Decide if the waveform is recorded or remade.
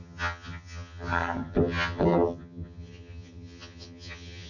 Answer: remade